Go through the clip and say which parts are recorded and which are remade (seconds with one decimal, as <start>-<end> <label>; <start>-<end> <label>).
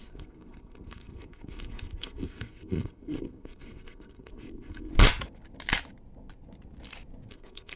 0.0-4.9 remade; 4.9-7.3 recorded; 7.3-7.8 remade